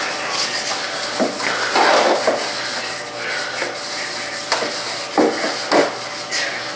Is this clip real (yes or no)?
yes